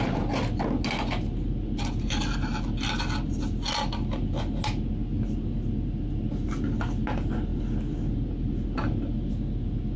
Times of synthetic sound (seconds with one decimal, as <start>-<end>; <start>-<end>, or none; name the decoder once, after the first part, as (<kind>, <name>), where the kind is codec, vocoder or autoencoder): none